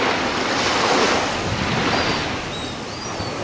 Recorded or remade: recorded